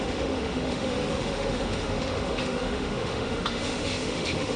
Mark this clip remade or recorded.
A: remade